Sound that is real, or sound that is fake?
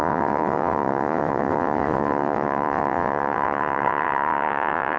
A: fake